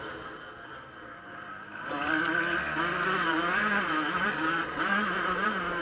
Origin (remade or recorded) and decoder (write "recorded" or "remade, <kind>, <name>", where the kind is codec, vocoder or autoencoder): recorded